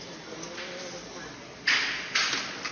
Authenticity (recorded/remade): recorded